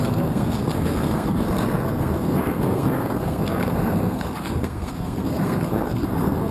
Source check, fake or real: fake